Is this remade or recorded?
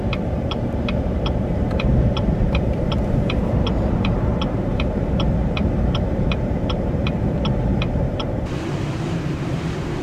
remade